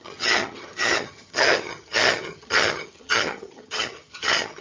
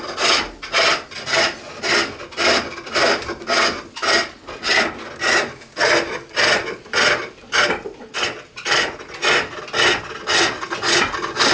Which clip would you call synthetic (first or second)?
first